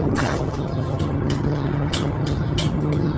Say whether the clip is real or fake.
fake